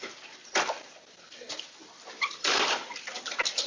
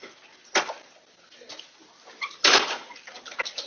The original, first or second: second